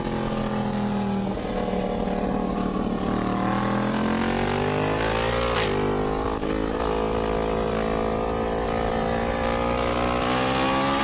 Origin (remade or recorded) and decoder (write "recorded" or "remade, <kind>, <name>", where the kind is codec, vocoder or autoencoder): recorded